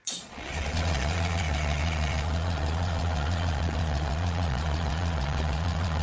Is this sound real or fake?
fake